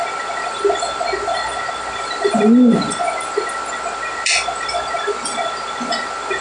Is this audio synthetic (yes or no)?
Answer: no